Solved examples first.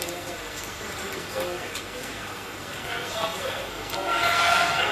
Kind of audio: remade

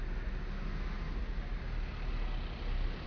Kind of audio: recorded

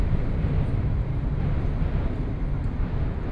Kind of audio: recorded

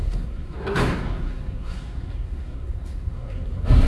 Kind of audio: remade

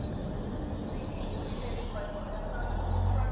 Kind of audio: recorded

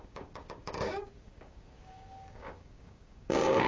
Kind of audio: remade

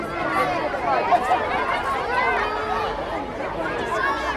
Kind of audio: recorded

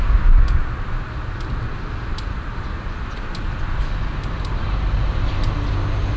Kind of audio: recorded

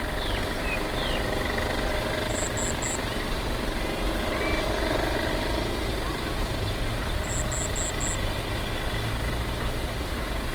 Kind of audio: recorded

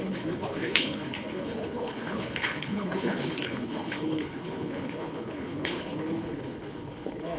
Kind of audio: remade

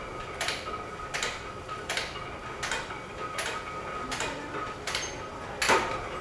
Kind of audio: recorded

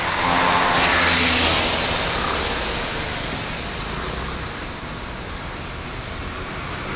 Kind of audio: recorded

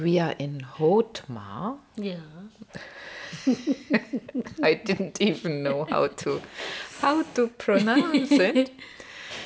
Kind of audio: recorded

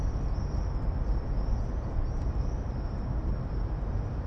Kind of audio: recorded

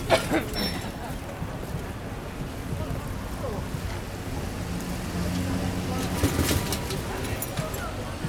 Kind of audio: recorded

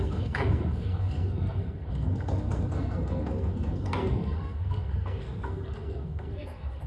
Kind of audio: remade